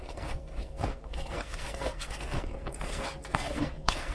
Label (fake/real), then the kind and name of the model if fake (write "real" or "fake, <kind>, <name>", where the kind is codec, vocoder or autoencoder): fake, codec, SNAC